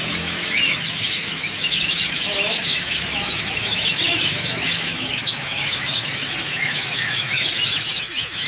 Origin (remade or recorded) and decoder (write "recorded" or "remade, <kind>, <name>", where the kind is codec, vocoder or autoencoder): remade, autoencoder, DAC-VAE